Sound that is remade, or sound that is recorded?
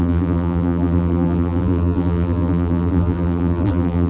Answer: remade